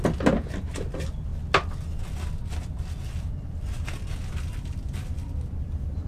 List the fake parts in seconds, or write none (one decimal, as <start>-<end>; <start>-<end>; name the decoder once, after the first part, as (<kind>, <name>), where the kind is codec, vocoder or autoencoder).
none